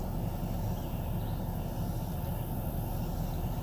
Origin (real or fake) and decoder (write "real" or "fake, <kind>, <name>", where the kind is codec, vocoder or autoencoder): real